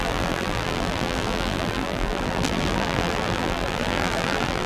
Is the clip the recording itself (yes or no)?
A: no